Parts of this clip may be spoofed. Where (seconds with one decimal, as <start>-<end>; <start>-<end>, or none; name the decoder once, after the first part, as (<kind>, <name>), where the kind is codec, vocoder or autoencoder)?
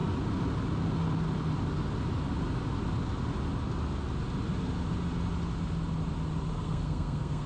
6.5-7.5 (codec, SNAC)